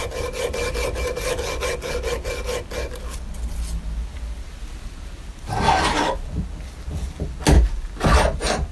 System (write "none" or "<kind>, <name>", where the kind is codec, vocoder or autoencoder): none